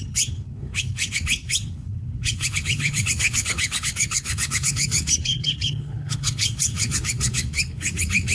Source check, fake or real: fake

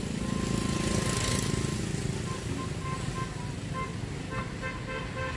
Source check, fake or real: real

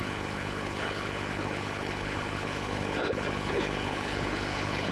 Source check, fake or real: fake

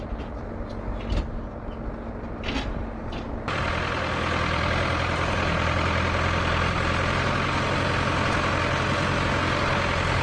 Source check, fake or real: real